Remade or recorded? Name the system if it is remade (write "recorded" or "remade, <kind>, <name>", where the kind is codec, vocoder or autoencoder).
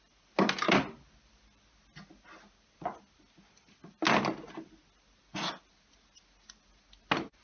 recorded